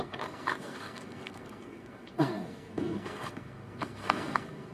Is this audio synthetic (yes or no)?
yes